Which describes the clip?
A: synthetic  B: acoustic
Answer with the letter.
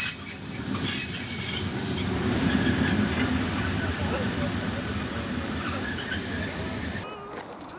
B